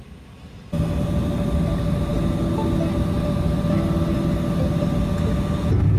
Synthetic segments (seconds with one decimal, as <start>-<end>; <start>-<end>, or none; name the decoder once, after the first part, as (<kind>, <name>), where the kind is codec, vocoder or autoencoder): none